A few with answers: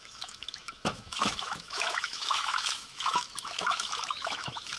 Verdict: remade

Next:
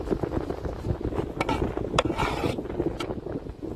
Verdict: recorded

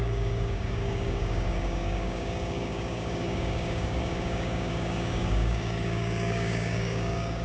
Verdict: remade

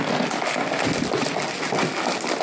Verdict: recorded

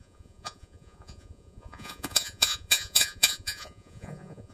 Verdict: remade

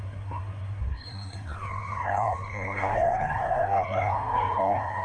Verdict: remade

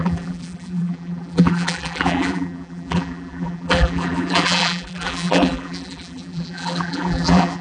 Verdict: remade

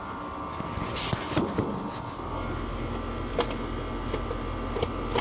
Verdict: recorded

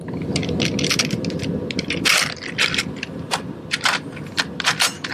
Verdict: recorded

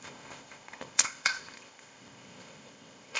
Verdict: remade